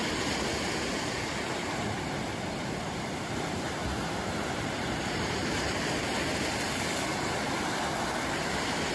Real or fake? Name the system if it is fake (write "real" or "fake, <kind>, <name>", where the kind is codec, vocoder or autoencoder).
real